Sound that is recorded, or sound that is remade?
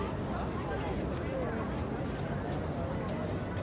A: recorded